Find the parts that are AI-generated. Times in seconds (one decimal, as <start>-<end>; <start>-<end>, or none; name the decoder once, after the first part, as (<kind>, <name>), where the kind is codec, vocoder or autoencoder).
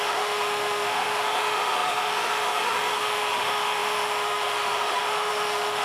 0.0-5.8 (autoencoder, DAC-VAE)